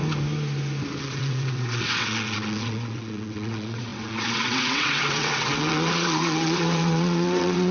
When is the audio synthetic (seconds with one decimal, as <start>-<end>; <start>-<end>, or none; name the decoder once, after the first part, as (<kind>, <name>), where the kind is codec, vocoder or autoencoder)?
1.0-7.7 (vocoder, WaveNeXt)